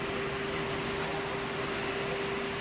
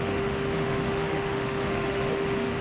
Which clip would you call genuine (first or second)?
first